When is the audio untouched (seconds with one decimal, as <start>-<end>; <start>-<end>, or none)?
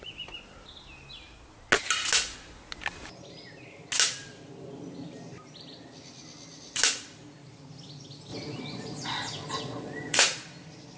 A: 0.0-8.3; 10.2-11.0